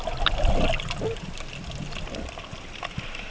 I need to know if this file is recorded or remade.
recorded